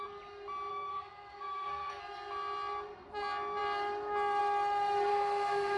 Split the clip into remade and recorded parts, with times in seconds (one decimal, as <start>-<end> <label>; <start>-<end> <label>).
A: 0.0-0.7 recorded; 0.7-2.0 remade; 2.0-5.1 recorded; 5.1-5.8 remade